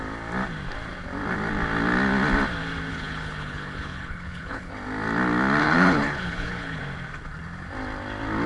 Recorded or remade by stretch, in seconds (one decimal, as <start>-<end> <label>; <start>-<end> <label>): 0.0-2.9 recorded; 2.9-4.7 remade; 4.7-5.6 recorded; 5.6-6.8 remade; 6.8-8.5 recorded